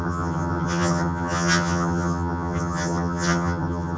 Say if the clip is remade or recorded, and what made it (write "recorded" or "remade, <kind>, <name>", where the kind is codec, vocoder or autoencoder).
remade, vocoder, HiFi-GAN